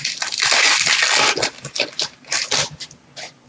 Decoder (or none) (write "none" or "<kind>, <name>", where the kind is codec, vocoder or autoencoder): none